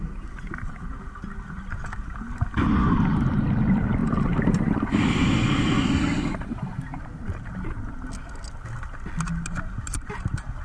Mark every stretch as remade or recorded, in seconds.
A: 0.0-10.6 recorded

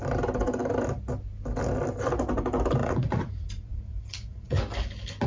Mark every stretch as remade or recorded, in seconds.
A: 0.0-2.8 recorded; 2.8-4.6 remade; 4.6-5.3 recorded

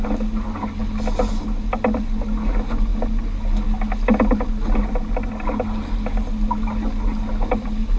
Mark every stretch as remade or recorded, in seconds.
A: 0.0-8.0 recorded

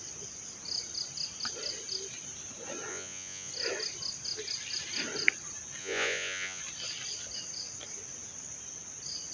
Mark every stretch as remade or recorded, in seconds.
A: 0.0-2.9 recorded; 2.9-3.5 remade; 3.5-5.8 recorded; 5.8-6.6 remade; 6.6-9.3 recorded

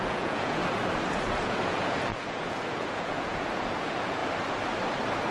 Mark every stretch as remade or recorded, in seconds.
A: 0.0-0.6 remade; 0.6-1.1 recorded; 1.1-4.2 remade; 4.2-5.3 recorded